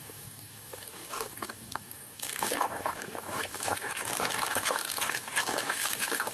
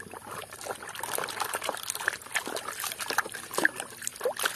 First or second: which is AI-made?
first